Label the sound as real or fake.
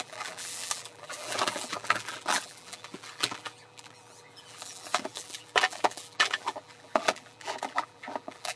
fake